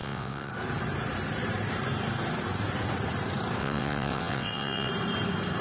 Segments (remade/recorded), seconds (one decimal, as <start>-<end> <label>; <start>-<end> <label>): 0.0-0.5 remade; 0.5-3.6 recorded; 3.6-4.9 remade; 4.9-5.6 recorded